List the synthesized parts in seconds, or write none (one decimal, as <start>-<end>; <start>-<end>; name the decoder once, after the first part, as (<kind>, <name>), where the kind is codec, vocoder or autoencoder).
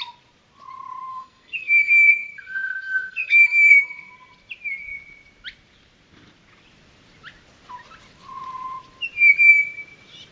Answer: 1.1-4.1 (codec, SNAC)